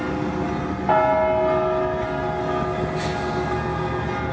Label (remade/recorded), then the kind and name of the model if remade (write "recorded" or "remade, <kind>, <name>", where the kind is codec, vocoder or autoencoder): recorded